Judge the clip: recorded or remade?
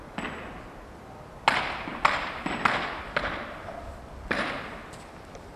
recorded